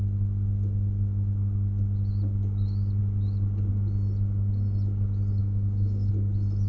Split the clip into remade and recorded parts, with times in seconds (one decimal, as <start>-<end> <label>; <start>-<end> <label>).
0.0-5.4 recorded; 5.4-6.1 remade; 6.1-6.7 recorded